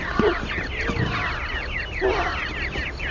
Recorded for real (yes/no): yes